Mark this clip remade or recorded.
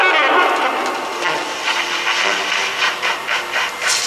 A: recorded